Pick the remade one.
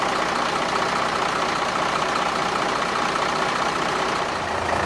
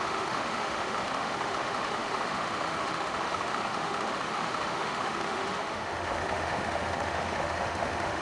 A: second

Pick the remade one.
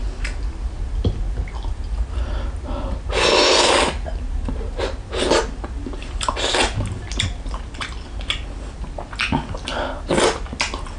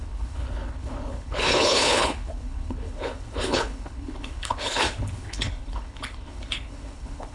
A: second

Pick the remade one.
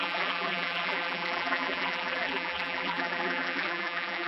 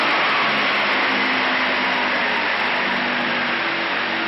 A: first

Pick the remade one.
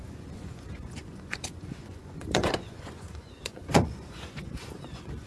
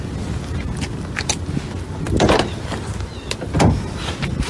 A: first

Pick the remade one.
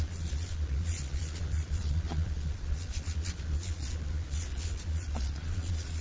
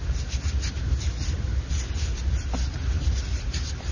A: first